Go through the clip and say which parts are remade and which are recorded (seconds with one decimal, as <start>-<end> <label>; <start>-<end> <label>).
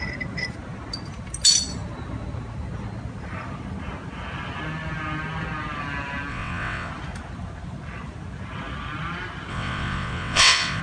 0.0-6.3 recorded; 6.3-6.9 remade; 6.9-9.5 recorded; 9.5-10.8 remade